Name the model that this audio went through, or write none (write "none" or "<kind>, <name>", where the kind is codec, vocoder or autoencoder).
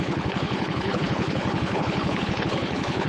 codec, HILCodec